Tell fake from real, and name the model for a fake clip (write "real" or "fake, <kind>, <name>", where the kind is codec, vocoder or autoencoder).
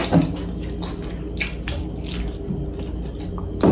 real